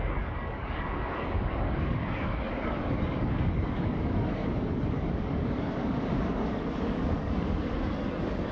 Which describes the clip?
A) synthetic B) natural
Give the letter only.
A